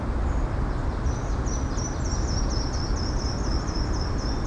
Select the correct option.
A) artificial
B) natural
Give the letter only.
B